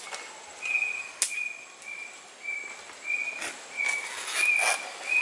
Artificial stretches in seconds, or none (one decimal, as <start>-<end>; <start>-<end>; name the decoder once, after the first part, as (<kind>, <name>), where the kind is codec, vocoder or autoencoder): none